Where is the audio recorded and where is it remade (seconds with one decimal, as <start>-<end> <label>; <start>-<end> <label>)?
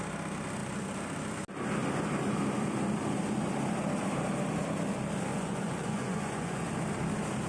0.0-5.3 recorded; 5.3-6.7 remade; 6.7-7.5 recorded